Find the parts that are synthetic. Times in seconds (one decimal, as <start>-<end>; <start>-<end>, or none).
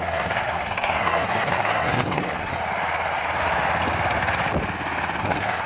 0.0-2.5; 5.2-5.7